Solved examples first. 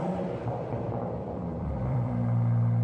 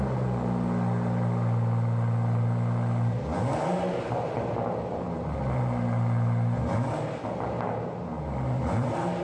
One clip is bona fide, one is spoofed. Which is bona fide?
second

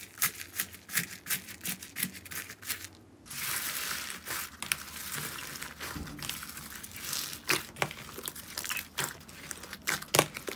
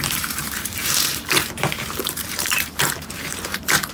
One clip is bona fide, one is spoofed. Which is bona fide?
first